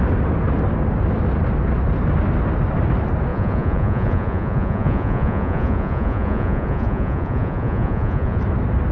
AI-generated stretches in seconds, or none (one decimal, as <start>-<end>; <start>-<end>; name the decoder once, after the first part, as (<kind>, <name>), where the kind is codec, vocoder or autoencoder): 3.3-8.4 (vocoder, Vocos)